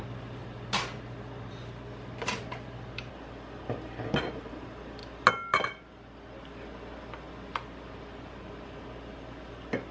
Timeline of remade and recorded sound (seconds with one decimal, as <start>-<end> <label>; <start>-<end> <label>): 0.0-9.9 recorded